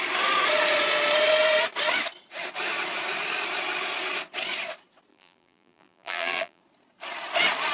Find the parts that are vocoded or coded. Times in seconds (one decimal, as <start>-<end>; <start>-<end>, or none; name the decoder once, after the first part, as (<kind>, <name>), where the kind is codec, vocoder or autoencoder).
5.1-6.6 (vocoder, BigVGAN v2)